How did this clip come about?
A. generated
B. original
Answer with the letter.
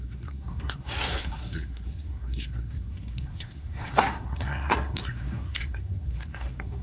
A